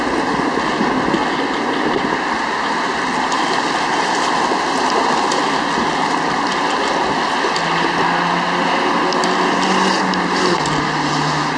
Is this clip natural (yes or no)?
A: yes